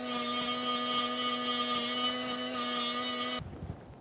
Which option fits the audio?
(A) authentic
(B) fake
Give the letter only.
A